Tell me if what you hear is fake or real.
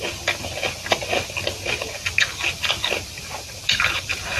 real